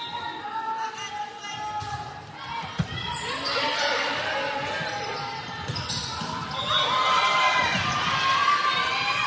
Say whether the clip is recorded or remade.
recorded